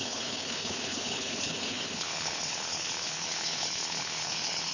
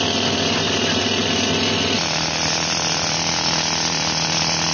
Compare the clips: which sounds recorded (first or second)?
second